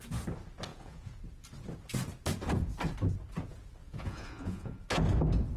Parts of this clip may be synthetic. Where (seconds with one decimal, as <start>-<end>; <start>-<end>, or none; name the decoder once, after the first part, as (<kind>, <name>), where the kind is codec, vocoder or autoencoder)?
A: 0.7-1.2 (vocoder, Vocos); 3.8-5.0